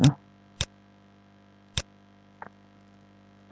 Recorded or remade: recorded